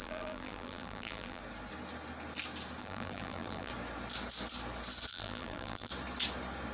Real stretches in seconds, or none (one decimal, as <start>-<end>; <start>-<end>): 1.4-2.8; 3.7-5.1; 5.9-6.7